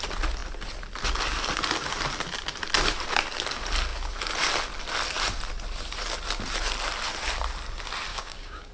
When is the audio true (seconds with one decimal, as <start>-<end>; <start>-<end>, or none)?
0.0-8.1